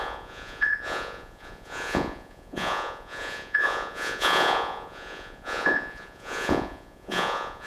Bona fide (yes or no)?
no